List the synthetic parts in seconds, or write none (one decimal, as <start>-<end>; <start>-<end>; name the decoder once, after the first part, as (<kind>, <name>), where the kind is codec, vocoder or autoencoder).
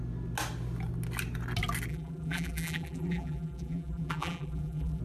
1.9-5.0 (vocoder, BigVGAN v2)